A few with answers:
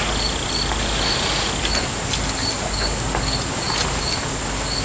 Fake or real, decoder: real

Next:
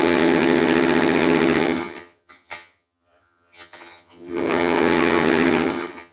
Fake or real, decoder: fake, vocoder, HiFi-GAN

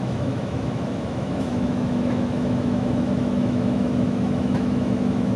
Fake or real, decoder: fake, autoencoder, DAC-VAE